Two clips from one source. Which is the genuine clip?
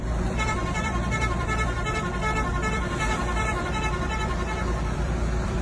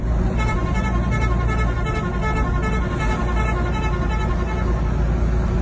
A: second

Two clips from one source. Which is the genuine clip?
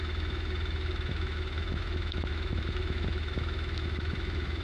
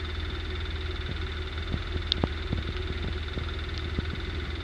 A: second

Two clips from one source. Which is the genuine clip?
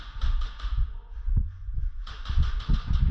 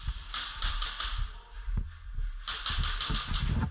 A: second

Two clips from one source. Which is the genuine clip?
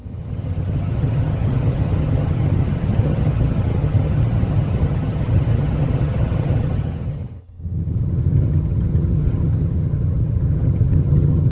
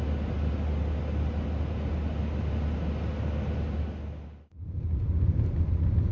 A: second